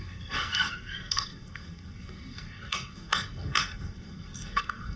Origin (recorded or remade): remade